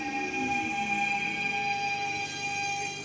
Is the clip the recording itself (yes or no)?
yes